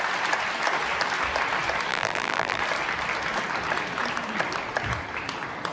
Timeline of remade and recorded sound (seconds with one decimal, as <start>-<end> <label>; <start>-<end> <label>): 0.0-1.9 recorded; 1.9-2.6 remade; 2.6-5.7 recorded